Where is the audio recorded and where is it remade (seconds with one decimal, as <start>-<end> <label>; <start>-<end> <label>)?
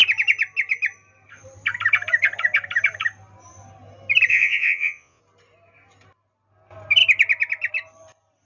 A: 0.0-4.3 recorded; 4.3-5.2 remade; 5.2-8.5 recorded